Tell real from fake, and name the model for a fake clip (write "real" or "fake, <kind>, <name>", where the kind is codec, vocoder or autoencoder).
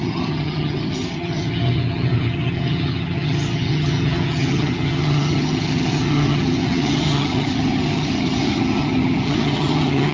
fake, vocoder, HiFi-GAN